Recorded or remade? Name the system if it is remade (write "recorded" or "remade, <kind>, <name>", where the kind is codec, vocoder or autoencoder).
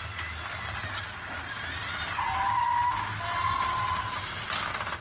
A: recorded